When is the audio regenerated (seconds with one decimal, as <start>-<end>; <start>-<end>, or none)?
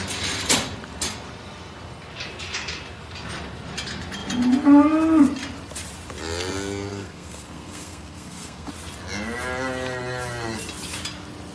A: 6.9-8.7